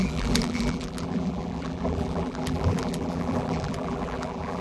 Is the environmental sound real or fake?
fake